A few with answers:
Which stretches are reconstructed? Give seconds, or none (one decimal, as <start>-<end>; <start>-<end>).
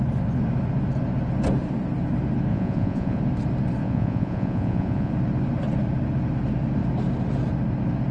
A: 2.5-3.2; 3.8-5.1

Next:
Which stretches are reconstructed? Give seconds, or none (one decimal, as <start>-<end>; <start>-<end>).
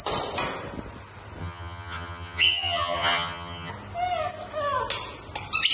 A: 1.4-3.7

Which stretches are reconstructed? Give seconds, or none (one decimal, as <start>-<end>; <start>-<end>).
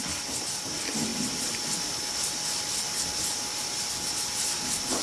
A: none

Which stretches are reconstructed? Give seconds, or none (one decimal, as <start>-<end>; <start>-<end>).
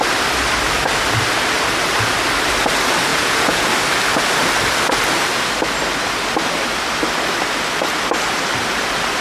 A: 3.1-3.7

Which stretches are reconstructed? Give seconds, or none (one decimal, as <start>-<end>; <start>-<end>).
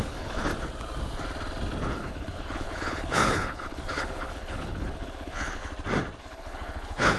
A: 0.0-0.5; 1.9-5.6; 6.2-7.2